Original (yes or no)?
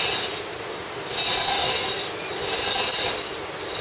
yes